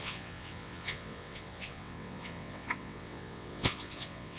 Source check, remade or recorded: remade